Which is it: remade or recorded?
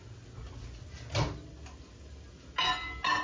recorded